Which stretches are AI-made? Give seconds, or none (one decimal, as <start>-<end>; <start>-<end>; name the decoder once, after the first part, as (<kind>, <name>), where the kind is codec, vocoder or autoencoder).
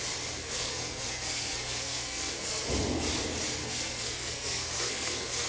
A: 0.4-2.7 (codec, SNAC); 3.6-5.5